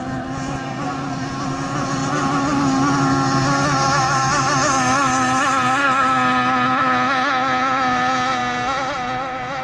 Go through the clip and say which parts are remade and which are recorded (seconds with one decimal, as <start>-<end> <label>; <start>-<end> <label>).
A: 0.0-9.6 recorded